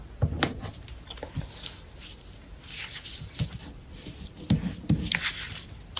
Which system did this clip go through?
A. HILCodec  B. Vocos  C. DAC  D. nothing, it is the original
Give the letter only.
D